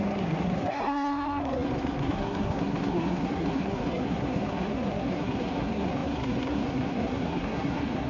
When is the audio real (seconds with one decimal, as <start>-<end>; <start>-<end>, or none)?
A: none